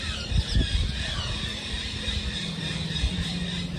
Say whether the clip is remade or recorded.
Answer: recorded